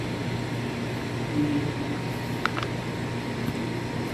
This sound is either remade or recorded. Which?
recorded